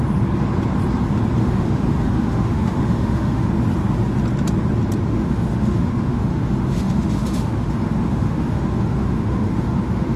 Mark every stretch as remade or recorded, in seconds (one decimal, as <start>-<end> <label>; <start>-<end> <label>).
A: 0.0-1.4 recorded; 1.4-3.5 remade; 3.5-5.1 recorded; 5.1-10.2 remade